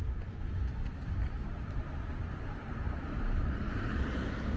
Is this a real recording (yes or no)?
yes